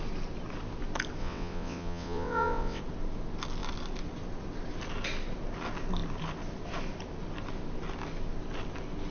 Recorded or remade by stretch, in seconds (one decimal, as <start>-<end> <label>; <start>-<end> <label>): 0.0-1.2 recorded; 1.2-2.8 remade; 2.8-9.1 recorded